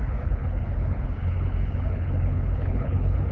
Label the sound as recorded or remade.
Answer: remade